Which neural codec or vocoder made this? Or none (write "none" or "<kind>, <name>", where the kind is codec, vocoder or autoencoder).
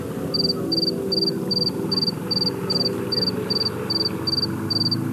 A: none